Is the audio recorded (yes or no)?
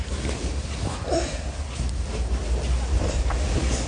yes